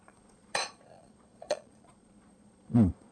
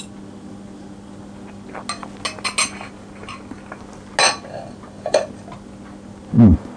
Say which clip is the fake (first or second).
first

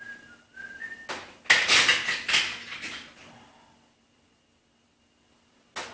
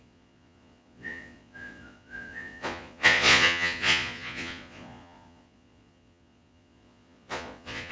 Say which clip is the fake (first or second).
second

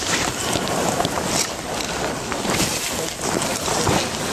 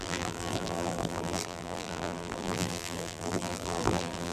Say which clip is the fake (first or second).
second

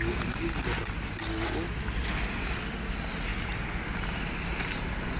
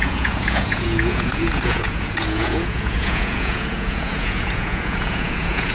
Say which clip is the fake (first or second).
second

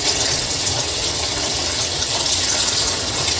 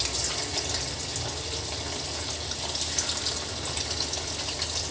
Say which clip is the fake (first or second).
first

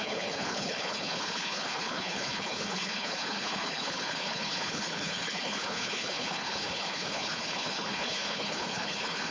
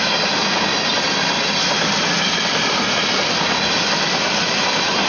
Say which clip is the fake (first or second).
first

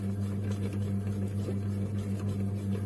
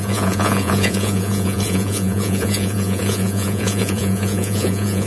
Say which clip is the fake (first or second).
second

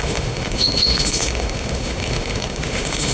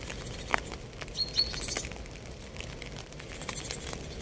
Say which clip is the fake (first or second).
first